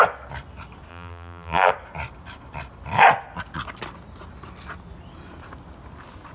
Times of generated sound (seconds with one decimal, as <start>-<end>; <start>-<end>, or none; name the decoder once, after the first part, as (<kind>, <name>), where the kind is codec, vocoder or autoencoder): 0.9-1.7 (vocoder, BigVGAN v2)

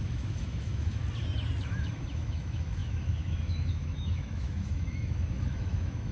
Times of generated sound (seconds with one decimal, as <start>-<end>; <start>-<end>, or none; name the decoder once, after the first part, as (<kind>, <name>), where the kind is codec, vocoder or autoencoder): 0.0-1.0 (autoencoder, DAC-VAE); 1.6-6.1

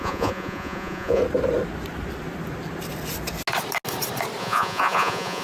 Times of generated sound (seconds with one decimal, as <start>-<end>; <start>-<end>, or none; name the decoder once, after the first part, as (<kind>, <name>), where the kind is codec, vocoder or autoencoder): 0.0-1.2 (vocoder, Vocos); 4.4-5.4

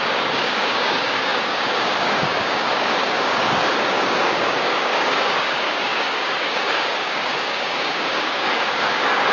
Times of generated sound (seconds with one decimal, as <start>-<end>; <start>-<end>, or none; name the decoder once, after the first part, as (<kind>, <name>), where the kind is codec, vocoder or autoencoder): 0.0-9.3 (codec, DAC)

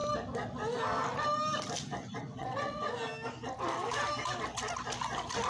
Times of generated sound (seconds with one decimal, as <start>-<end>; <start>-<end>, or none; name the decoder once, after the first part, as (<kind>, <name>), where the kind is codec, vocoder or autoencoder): 2.2-2.9 (vocoder, WaveNeXt)

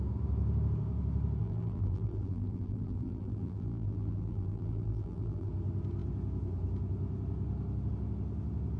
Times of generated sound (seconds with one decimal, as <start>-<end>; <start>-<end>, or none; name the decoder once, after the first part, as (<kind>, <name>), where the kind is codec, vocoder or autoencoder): 1.4-5.5 (vocoder, BigVGAN v2)